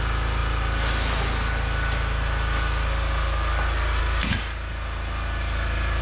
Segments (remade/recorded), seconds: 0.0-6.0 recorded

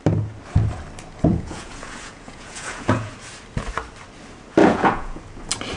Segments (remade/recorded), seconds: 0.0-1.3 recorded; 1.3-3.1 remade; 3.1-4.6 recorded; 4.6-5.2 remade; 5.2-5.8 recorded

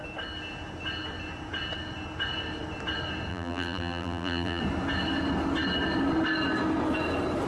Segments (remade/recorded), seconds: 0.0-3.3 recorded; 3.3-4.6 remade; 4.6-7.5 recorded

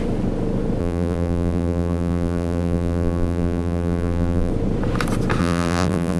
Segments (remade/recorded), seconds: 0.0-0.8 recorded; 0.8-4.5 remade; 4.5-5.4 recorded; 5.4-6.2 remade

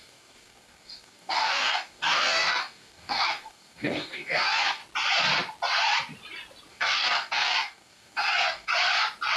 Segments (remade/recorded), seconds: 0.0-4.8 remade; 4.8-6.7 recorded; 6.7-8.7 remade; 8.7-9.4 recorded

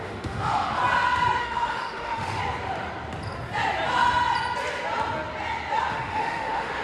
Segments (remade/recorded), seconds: 0.0-0.8 remade; 0.8-1.4 recorded; 1.4-2.4 remade; 2.4-5.9 recorded; 5.9-6.8 remade

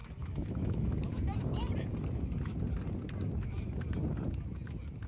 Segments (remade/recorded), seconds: 0.0-1.2 remade; 1.2-5.1 recorded

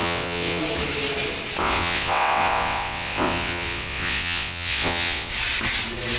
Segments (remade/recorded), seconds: 0.0-0.6 remade; 0.6-1.6 recorded; 1.6-5.3 remade; 5.3-6.2 recorded